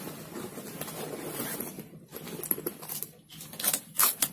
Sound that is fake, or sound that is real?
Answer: real